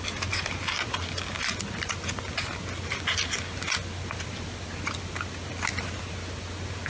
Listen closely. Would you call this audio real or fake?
real